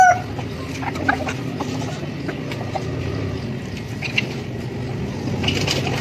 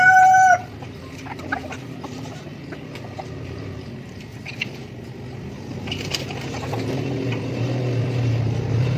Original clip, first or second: first